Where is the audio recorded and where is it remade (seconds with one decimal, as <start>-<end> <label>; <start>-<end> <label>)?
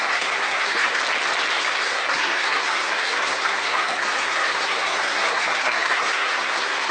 0.0-1.0 remade; 1.0-1.5 recorded; 1.5-6.9 remade